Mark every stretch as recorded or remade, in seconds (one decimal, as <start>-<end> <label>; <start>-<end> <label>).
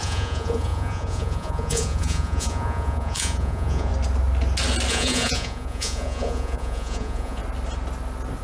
0.0-3.9 remade; 3.9-4.9 recorded; 4.9-7.4 remade; 7.4-8.4 recorded